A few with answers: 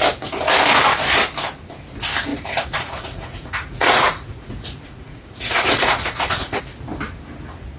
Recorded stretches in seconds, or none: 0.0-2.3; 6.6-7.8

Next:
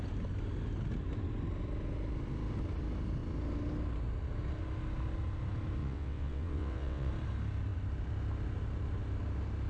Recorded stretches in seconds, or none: 0.0-5.8; 7.1-9.7

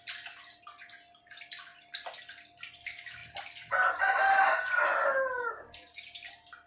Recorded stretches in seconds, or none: 0.0-6.7

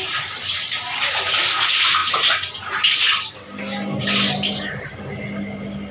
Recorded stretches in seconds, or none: 0.0-5.9